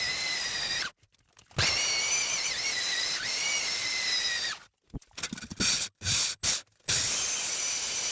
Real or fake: real